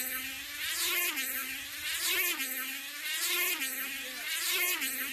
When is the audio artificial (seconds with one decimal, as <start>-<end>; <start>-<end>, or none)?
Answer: none